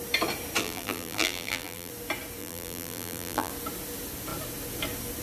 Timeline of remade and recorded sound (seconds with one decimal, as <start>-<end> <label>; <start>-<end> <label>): 0.0-0.6 recorded; 0.6-1.9 remade; 1.9-2.4 recorded; 2.4-3.5 remade; 3.5-5.2 recorded